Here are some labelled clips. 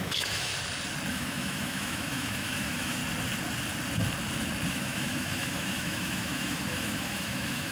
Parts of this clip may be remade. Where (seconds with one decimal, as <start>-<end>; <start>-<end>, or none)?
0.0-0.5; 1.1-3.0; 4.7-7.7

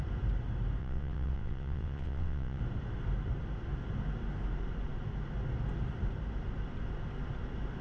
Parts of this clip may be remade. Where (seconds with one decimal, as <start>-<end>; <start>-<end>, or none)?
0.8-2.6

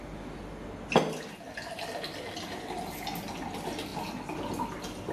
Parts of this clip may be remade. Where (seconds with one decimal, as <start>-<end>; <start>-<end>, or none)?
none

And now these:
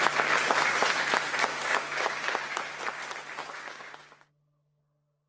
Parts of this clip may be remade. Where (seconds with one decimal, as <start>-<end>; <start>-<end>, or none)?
1.5-2.6; 3.4-4.8

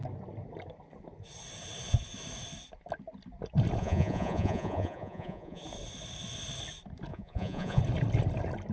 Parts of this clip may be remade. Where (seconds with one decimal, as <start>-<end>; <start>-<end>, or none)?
3.8-5.6; 7.1-7.8